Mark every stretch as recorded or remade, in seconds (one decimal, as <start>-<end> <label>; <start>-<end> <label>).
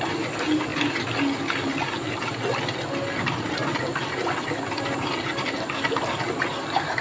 0.0-7.0 recorded